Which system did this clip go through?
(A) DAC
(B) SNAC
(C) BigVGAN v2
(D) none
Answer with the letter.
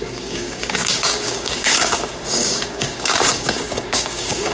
A